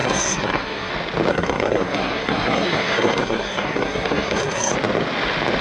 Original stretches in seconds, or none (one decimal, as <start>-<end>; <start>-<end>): 0.9-1.3; 4.7-5.6